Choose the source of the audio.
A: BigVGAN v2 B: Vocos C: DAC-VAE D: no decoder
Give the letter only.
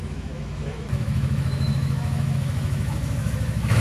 C